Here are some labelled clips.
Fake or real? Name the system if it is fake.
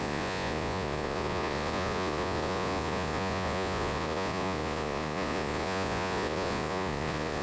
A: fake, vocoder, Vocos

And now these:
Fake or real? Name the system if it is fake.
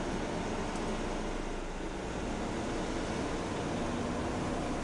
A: real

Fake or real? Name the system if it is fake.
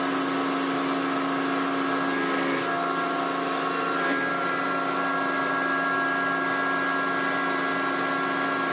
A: real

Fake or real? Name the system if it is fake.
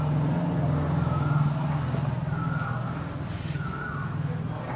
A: real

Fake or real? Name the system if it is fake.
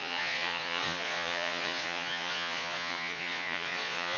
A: fake, vocoder, Vocos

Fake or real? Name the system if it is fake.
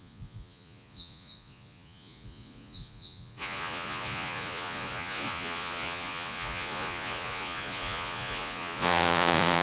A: fake, vocoder, Vocos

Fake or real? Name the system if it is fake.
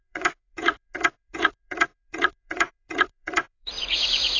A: fake, vocoder, Vocos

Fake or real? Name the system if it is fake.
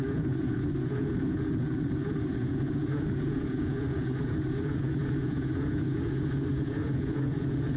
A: fake, vocoder, Vocos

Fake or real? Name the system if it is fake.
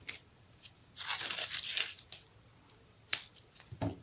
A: real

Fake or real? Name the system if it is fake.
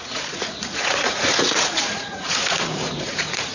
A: fake, vocoder, Vocos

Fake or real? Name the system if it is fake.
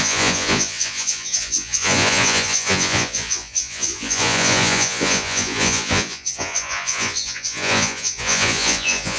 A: fake, vocoder, Vocos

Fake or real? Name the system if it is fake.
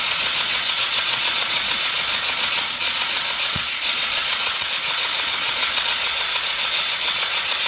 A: fake, vocoder, Vocos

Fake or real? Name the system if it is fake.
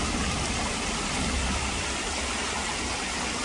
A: real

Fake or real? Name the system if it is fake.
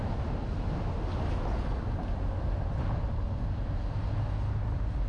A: real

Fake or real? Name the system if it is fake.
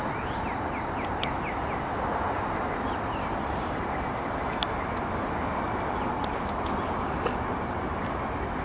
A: real